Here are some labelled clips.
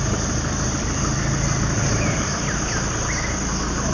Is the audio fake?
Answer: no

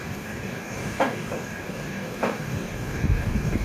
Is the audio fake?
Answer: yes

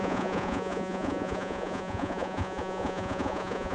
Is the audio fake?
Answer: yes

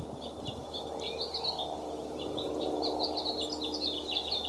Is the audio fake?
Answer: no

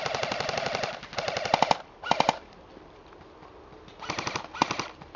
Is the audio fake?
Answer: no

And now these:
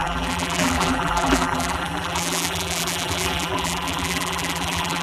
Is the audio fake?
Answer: yes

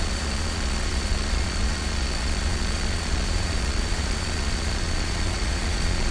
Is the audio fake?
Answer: yes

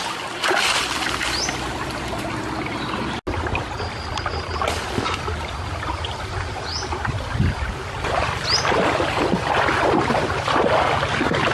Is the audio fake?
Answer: no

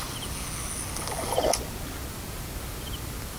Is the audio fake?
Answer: no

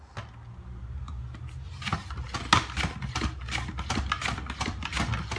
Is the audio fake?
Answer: no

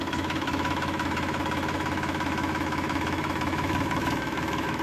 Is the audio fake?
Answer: yes